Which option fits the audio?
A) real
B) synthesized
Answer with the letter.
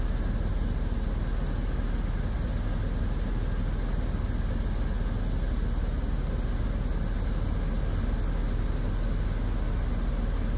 A